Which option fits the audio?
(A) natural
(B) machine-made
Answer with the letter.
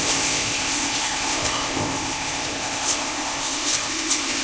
B